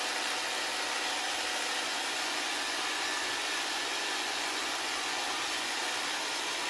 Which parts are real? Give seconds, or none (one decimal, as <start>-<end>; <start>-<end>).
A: 0.0-1.8; 5.8-6.7